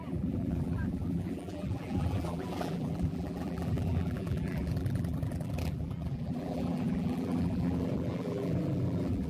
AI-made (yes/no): yes